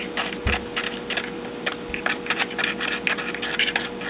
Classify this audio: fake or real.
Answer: real